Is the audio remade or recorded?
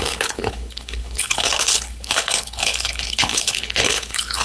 remade